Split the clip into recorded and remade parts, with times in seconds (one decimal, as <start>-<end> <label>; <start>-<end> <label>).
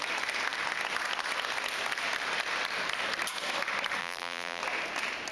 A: 0.0-4.0 recorded; 4.0-4.6 remade; 4.6-5.3 recorded